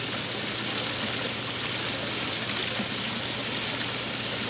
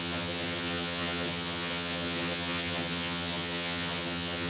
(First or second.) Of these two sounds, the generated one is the second